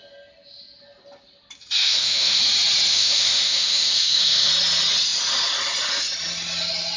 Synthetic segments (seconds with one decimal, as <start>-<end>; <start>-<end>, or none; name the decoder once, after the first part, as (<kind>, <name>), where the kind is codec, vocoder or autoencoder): 1.8-2.4 (autoencoder, DAC-VAE); 2.9-4.5